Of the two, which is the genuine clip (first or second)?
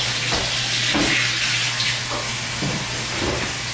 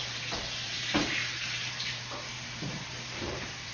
first